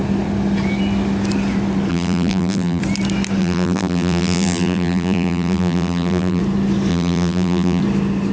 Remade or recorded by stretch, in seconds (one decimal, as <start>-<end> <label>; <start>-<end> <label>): 0.0-1.9 recorded; 1.9-2.8 remade; 2.8-3.4 recorded; 3.4-6.4 remade; 6.4-6.9 recorded; 6.9-7.8 remade; 7.8-8.3 recorded